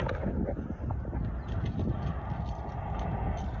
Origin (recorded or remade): recorded